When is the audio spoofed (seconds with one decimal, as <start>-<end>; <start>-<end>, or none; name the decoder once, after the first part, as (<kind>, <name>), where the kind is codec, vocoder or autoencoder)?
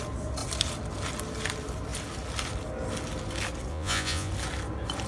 3.7-4.3 (vocoder, Vocos)